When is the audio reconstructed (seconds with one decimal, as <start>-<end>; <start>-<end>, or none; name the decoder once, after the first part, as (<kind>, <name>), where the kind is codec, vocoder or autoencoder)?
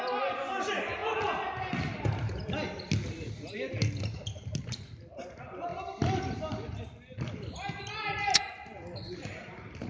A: none